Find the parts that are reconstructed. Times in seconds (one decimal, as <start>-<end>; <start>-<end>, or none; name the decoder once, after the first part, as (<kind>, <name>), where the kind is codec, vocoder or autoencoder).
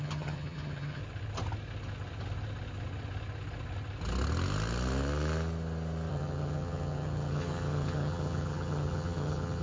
0.0-1.0 (vocoder, HiFi-GAN); 6.1-9.6